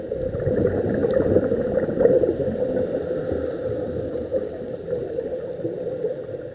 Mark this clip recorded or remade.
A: recorded